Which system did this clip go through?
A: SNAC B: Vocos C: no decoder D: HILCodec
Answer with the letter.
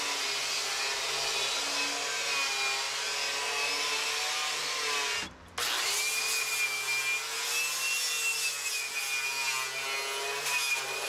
C